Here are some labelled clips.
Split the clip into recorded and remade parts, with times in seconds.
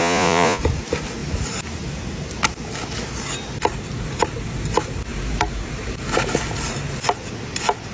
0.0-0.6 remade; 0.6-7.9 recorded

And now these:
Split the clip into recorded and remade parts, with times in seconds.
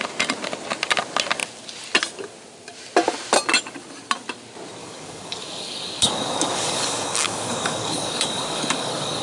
0.0-4.8 recorded; 4.8-9.2 remade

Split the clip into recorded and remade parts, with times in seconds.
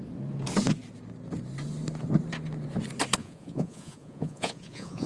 0.0-3.2 recorded; 3.2-5.1 remade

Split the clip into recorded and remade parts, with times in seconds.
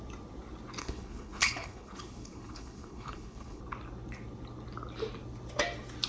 0.0-0.8 recorded; 0.8-3.6 remade; 3.6-6.1 recorded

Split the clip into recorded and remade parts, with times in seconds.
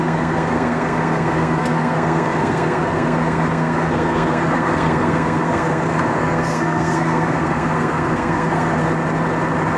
0.0-8.8 remade; 8.8-9.8 recorded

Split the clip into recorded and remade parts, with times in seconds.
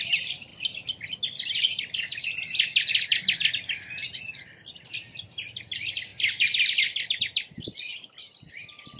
0.0-9.0 recorded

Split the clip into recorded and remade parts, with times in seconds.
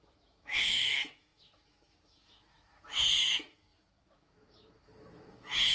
0.0-5.7 remade